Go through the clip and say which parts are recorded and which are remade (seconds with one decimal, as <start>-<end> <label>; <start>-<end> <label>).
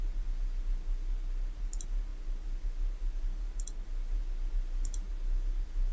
0.0-5.9 recorded